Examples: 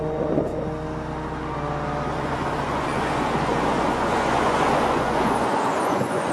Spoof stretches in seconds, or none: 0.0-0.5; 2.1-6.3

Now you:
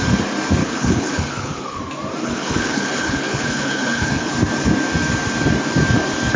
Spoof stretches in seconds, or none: 0.6-1.8; 2.2-4.3

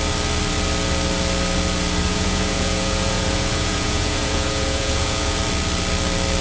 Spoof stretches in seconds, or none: 2.1-5.4

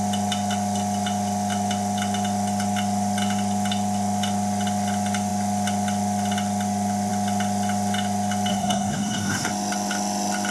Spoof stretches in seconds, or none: 8.5-9.5

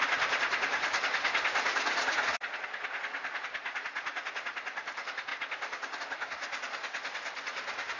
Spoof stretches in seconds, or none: 3.6-4.3

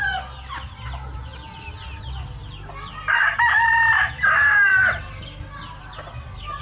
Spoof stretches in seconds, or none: none

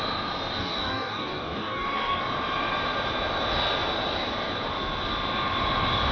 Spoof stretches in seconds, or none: 0.6-2.2